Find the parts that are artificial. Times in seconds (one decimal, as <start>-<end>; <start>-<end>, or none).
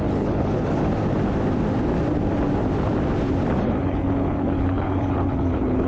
0.0-0.8; 3.7-5.9